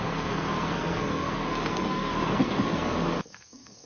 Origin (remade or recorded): remade